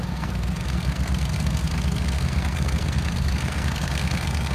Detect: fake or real fake